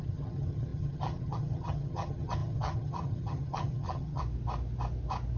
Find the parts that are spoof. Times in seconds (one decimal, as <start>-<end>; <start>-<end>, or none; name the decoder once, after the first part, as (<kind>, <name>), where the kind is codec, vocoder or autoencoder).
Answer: 0.0-4.2 (vocoder, HiFi-GAN)